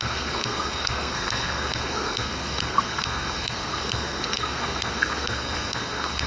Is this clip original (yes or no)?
no